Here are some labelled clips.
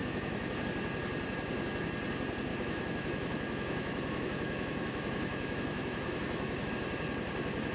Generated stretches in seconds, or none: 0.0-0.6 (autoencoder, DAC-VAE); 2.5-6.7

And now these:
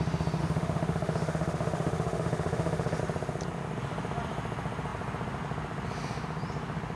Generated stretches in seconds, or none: 0.4-3.0 (autoencoder, DAC-VAE)

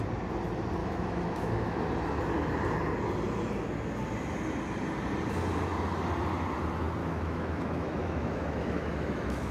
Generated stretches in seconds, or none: 0.8-1.8 (autoencoder, DAC-VAE); 7.0-9.5

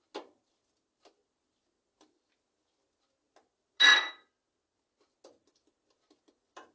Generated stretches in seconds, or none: none